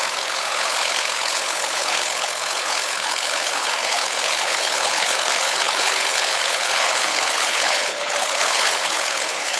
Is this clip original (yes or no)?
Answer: no